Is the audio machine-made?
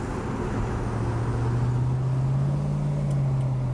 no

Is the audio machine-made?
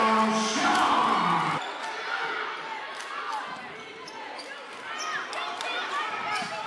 no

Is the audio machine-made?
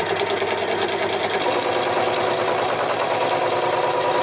no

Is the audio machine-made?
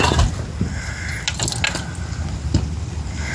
no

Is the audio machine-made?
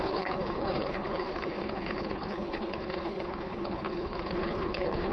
yes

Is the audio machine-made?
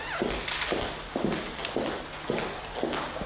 no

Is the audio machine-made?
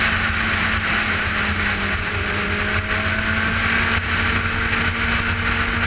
no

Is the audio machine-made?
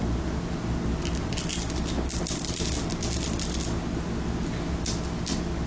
no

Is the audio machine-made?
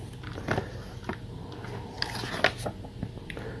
no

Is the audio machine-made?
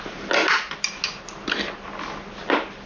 no